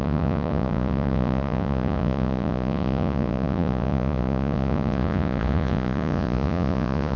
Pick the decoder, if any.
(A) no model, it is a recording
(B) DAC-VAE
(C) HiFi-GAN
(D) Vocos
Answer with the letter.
D